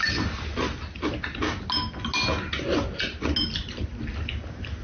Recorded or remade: recorded